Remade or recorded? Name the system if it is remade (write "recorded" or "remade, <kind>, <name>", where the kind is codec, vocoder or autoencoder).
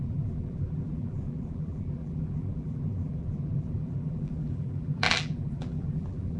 remade, vocoder, BigVGAN v2